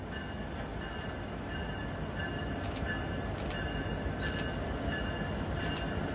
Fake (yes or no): no